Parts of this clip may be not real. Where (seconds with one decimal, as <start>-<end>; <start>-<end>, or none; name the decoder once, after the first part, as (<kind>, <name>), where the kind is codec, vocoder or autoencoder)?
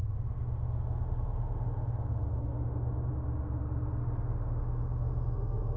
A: 0.0-3.1 (autoencoder, DAC-VAE); 4.0-5.8